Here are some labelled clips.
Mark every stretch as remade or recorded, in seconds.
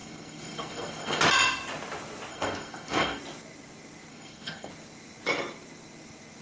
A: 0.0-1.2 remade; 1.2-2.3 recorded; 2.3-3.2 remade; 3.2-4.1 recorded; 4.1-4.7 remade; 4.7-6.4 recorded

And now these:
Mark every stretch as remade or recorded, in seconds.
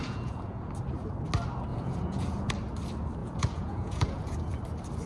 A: 0.0-0.7 remade; 0.7-1.7 recorded; 1.7-2.5 remade; 2.5-3.2 recorded; 3.2-4.5 remade; 4.5-5.1 recorded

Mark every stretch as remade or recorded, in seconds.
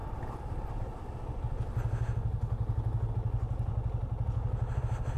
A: 0.0-5.2 recorded